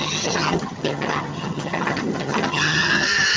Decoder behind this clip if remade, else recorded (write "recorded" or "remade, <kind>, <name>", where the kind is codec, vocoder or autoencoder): remade, vocoder, HiFi-GAN